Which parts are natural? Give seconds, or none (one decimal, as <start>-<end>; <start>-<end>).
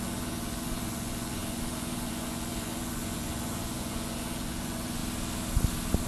5.0-6.1